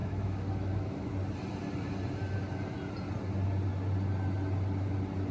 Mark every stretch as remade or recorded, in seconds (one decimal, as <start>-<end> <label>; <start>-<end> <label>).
0.0-1.1 remade; 1.1-5.3 recorded